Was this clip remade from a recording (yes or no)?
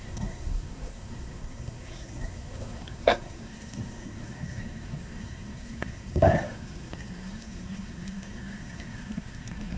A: yes